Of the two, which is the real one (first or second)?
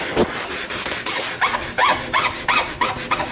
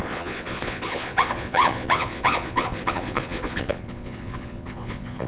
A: first